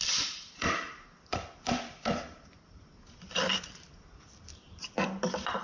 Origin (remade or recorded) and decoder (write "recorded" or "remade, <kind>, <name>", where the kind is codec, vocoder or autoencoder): remade, vocoder, BigVGAN v2